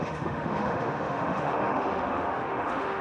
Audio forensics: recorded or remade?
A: remade